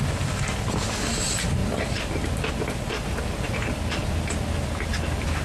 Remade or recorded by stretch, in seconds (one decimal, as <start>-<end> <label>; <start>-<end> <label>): 0.0-1.6 recorded; 1.6-2.9 remade; 2.9-5.4 recorded